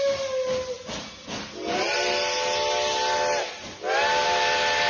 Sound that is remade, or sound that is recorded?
recorded